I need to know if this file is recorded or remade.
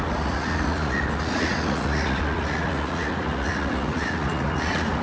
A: remade